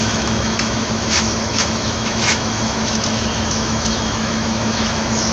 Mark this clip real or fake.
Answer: fake